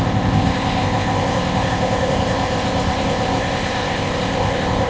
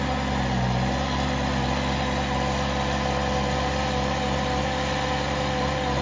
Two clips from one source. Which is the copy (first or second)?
first